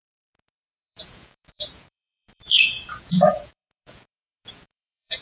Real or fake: fake